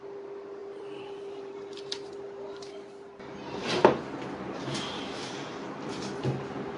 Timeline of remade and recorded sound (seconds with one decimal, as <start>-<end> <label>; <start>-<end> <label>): 0.0-0.6 recorded; 0.6-1.5 remade; 1.5-3.8 recorded; 3.8-5.9 remade; 5.9-6.8 recorded